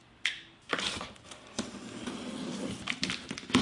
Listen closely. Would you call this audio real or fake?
real